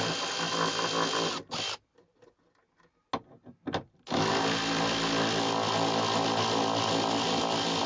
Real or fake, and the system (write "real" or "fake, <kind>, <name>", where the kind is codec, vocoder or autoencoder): real